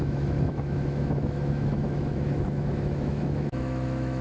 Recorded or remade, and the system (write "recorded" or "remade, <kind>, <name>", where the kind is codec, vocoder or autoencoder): remade, autoencoder, DAC-VAE